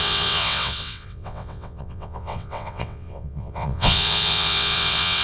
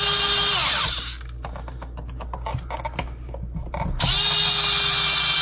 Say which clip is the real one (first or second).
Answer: second